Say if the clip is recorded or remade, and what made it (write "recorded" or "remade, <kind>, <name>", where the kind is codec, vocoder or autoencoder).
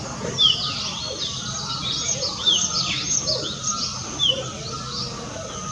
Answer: recorded